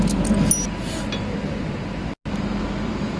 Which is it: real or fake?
real